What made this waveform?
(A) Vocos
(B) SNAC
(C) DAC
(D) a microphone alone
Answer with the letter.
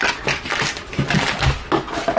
D